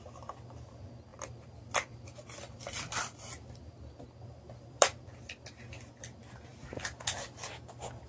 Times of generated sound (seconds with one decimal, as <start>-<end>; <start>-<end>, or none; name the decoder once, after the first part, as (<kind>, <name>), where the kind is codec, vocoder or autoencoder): 1.1-6.0 (vocoder, BigVGAN v2); 6.5-7.1